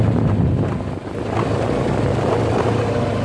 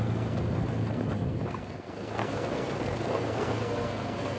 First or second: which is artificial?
second